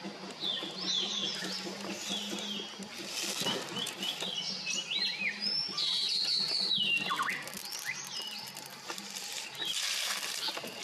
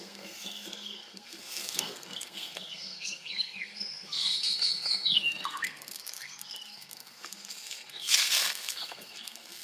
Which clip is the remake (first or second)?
second